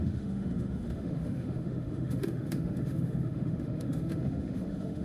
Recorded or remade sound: remade